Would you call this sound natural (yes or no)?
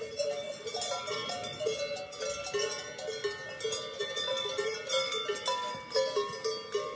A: yes